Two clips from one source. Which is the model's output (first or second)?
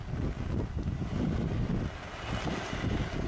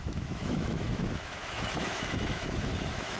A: second